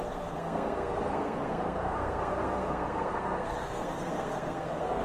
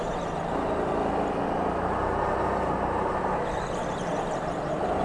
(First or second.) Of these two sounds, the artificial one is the first